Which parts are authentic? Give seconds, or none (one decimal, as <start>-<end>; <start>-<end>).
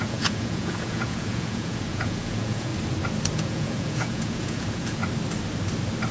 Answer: 2.7-3.3; 5.0-6.1